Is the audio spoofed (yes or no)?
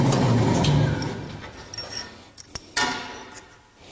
no